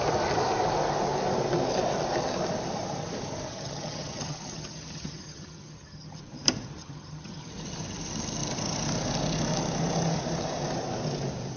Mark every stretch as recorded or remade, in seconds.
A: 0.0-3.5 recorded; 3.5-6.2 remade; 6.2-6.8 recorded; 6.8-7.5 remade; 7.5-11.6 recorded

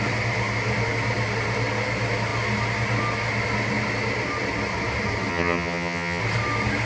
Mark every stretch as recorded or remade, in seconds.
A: 0.0-5.3 recorded; 5.3-6.2 remade; 6.2-6.9 recorded

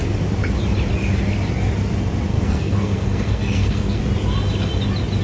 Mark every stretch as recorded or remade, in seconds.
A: 0.0-2.3 recorded; 2.3-4.0 remade; 4.0-5.2 recorded

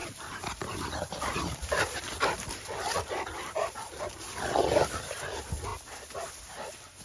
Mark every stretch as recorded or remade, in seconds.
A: 0.0-4.0 remade; 4.0-5.7 recorded; 5.7-6.3 remade; 6.3-7.0 recorded

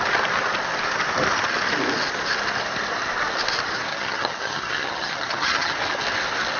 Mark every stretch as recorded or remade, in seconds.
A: 0.0-3.9 recorded; 3.9-5.7 remade; 5.7-6.6 recorded

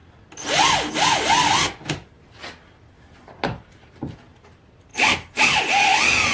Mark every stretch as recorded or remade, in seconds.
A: 0.0-4.9 recorded; 4.9-5.6 remade; 5.6-6.3 recorded